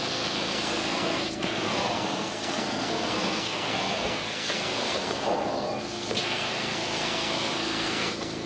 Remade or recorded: remade